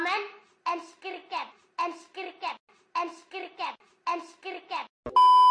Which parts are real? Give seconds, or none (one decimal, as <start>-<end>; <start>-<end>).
0.0-5.5